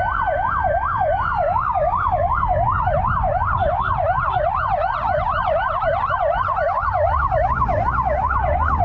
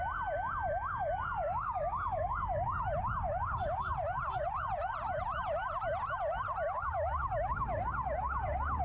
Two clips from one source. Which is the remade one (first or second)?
first